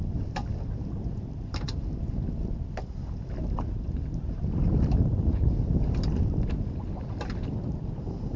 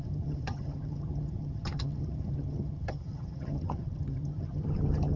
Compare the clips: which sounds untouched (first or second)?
first